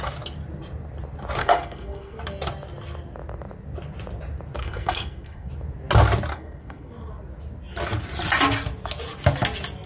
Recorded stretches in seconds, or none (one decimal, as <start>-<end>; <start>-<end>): 0.0-1.4; 2.2-4.6; 5.5-6.3; 6.9-9.9